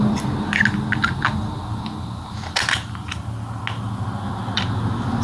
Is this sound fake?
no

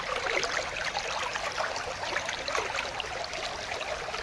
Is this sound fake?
yes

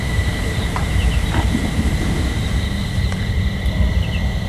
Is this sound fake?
yes